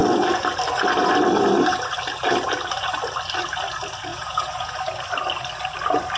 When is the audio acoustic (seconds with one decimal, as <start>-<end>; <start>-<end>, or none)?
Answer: 0.0-4.1; 4.8-6.2